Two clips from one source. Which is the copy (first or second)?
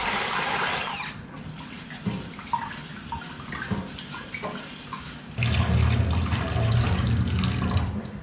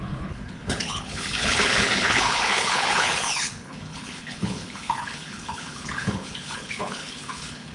second